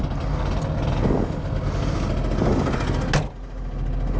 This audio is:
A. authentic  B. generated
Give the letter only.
A